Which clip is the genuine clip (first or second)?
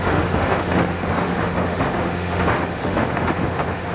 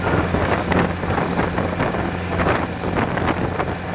second